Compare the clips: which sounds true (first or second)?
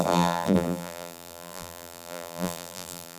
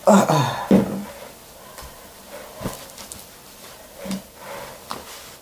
second